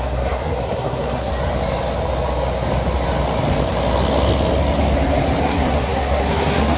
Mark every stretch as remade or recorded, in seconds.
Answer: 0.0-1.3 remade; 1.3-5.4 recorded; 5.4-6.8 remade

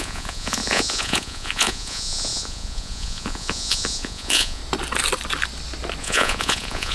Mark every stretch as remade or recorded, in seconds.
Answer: 0.0-4.6 remade; 4.6-6.0 recorded; 6.0-6.9 remade

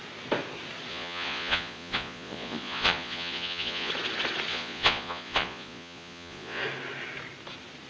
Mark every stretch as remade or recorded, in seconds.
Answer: 0.0-0.9 recorded; 0.9-3.9 remade; 3.9-4.5 recorded; 4.5-6.6 remade; 6.6-7.9 recorded

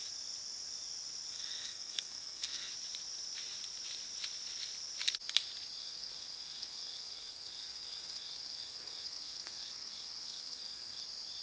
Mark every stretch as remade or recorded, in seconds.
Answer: 0.0-1.3 recorded; 1.3-2.7 remade; 2.7-5.8 recorded; 5.8-11.0 remade; 11.0-11.4 recorded

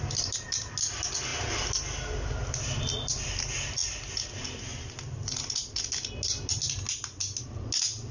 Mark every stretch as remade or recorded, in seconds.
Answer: 0.0-8.1 recorded

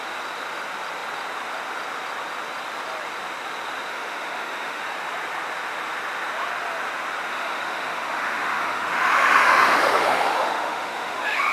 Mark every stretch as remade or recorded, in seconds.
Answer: 0.0-3.9 recorded; 3.9-4.8 remade; 4.8-7.3 recorded; 7.3-11.5 remade

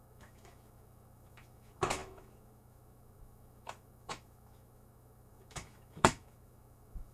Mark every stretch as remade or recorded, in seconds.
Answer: 0.0-7.1 remade

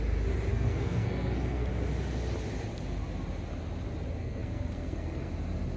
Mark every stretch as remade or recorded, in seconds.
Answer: 0.0-0.5 recorded; 0.5-1.7 remade; 1.7-4.2 recorded; 4.2-5.3 remade; 5.3-5.8 recorded